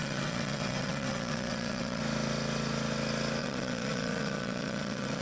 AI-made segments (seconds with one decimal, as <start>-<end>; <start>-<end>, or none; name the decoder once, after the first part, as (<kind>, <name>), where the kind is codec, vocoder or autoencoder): 0.0-2.0 (vocoder, WaveNeXt); 3.4-5.2